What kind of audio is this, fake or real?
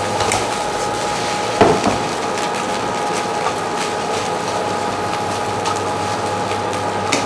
real